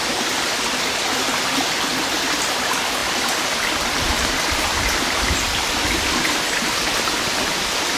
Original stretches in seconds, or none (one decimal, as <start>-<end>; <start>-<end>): 1.9-2.5